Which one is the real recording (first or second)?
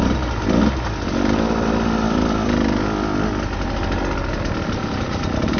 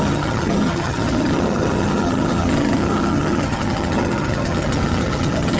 first